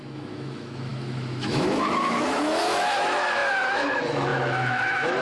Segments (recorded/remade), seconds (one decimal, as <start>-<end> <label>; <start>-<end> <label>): 0.0-5.2 remade